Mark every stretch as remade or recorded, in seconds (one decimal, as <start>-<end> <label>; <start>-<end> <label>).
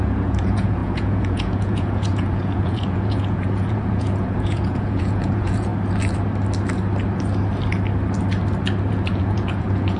0.0-5.7 remade; 5.7-8.9 recorded; 8.9-10.0 remade